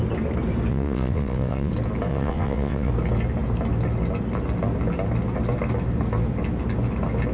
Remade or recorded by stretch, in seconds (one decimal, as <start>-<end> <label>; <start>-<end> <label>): 0.0-0.7 recorded; 0.7-1.7 remade; 1.7-2.1 recorded; 2.1-2.9 remade; 2.9-7.3 recorded